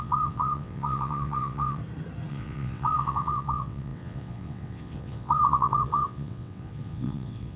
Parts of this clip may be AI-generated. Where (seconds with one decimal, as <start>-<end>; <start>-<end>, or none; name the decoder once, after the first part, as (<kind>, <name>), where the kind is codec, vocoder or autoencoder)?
0.0-1.8 (vocoder, WaveNeXt); 2.3-7.6